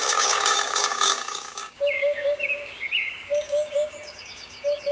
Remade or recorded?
remade